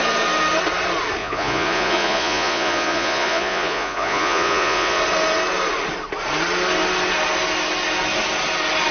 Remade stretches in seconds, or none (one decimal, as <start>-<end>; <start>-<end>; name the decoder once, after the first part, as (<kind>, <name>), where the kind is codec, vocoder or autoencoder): 1.2-5.0 (vocoder, Vocos)